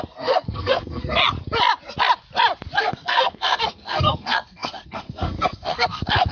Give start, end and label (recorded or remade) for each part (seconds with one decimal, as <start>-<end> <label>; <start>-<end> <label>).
0.0-1.2 remade; 1.2-2.8 recorded; 2.8-6.3 remade